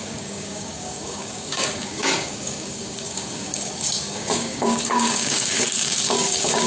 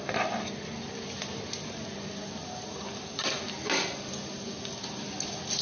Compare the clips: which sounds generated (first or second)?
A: first